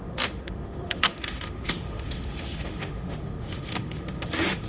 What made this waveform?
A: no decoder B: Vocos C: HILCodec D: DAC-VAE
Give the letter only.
D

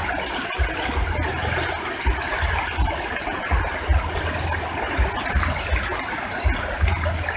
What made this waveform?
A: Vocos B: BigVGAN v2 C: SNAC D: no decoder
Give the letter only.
D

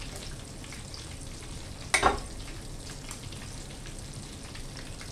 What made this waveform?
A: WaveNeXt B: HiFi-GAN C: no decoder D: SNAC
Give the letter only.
C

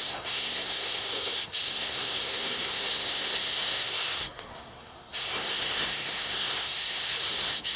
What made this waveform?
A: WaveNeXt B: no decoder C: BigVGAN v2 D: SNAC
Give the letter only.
D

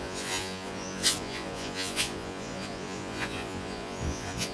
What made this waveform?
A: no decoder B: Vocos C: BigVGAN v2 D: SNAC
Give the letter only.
B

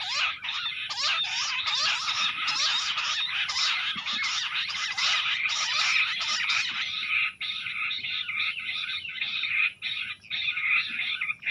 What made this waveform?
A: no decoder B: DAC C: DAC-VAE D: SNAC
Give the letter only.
A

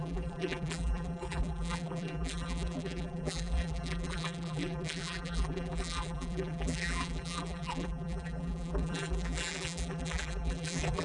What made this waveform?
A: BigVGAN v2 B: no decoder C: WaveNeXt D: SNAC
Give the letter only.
A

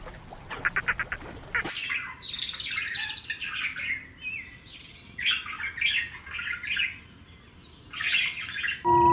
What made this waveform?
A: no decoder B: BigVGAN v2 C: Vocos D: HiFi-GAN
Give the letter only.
A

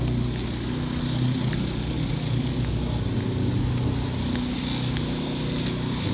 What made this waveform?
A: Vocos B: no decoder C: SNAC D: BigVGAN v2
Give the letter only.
B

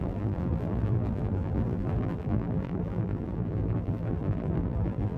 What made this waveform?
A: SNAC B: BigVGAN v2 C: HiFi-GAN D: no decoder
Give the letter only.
B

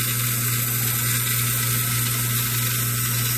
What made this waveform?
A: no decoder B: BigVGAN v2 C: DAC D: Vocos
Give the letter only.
A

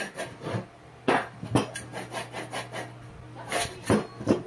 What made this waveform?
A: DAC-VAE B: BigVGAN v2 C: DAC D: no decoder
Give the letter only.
D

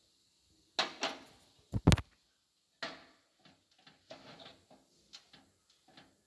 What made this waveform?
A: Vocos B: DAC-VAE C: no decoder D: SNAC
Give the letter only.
C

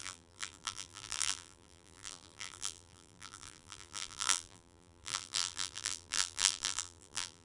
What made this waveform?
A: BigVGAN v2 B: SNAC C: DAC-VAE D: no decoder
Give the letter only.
A